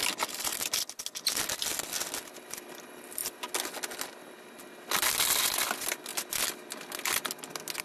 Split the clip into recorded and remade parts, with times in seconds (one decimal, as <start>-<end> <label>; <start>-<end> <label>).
0.0-7.8 recorded